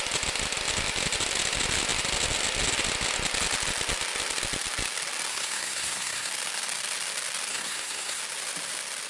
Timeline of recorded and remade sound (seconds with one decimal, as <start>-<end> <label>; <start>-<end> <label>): 0.0-5.3 recorded; 5.3-6.3 remade; 6.3-7.5 recorded; 7.5-8.2 remade; 8.2-9.1 recorded